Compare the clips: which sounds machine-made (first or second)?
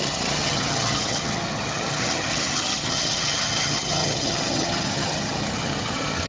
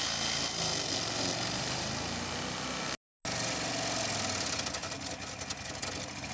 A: first